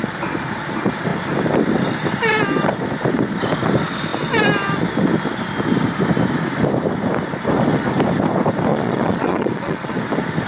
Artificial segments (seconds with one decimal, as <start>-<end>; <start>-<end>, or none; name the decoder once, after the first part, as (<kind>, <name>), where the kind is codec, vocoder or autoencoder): 8.7-10.0 (vocoder, Vocos)